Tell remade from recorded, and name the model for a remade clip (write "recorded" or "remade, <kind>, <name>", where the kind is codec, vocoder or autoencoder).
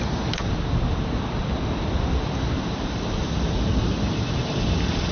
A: recorded